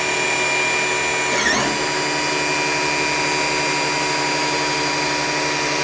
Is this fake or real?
real